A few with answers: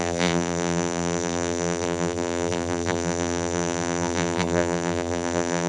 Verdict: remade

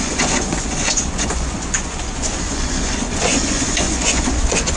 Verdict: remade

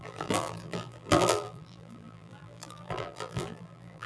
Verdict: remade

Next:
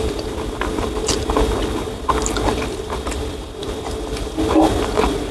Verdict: recorded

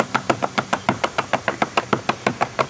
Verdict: recorded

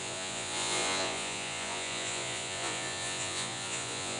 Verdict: remade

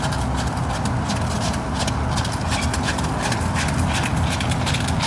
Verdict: recorded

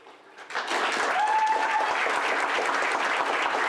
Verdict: recorded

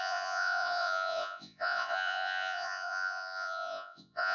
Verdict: remade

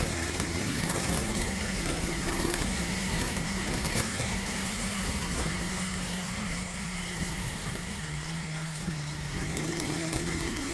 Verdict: remade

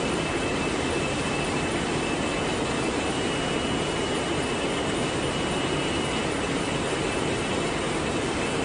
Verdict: recorded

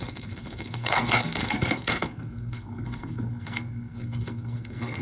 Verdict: remade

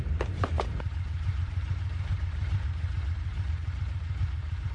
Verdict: remade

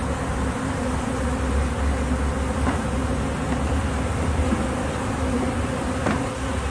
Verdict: recorded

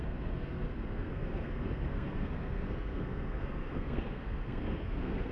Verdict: remade